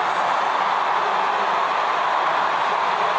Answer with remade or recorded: recorded